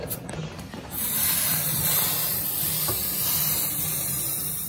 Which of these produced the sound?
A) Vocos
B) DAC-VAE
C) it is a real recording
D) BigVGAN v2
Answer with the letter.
C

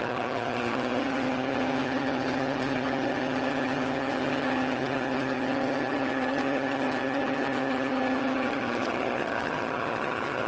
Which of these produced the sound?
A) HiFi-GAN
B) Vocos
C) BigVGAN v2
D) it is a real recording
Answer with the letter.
A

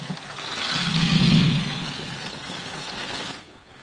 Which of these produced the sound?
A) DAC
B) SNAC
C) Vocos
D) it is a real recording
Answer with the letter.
D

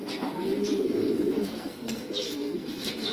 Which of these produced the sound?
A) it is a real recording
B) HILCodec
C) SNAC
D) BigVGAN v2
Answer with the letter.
C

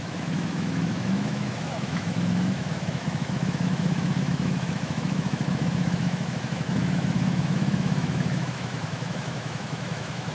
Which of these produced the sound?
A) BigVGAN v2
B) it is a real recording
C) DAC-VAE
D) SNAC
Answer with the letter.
C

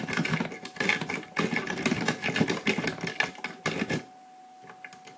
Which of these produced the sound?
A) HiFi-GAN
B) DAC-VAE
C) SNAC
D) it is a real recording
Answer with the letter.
D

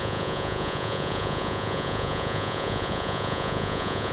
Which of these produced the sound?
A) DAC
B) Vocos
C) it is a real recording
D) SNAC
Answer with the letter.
B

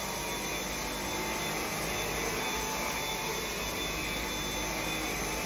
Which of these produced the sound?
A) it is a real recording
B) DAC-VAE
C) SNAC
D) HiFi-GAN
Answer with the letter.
A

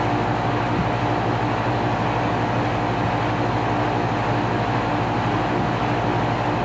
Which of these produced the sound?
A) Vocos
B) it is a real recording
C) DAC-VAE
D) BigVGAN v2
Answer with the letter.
B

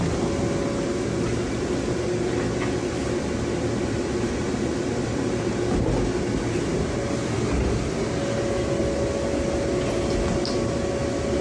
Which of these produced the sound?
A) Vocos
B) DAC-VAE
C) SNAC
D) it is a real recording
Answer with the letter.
D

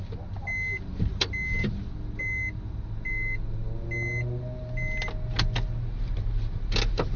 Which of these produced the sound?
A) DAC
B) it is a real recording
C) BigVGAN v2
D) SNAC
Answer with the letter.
B